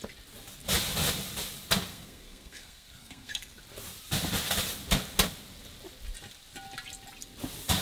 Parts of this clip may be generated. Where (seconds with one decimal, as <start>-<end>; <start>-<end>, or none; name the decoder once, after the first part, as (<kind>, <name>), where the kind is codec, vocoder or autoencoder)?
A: 1.9-3.6 (codec, SNAC)